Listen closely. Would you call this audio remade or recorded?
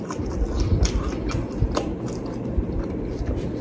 recorded